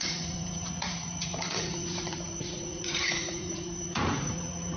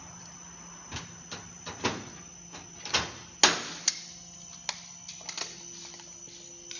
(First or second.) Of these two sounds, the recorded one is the second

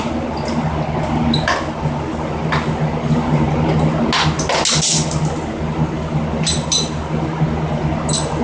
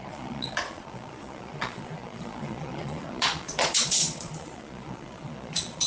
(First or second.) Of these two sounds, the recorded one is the first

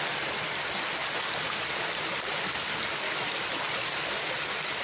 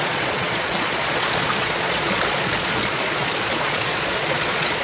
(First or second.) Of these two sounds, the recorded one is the first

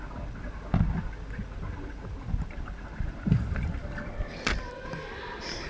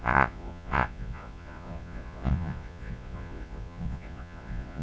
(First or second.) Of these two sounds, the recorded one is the first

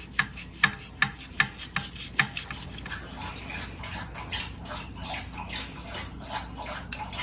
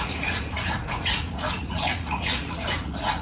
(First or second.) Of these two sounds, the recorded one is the first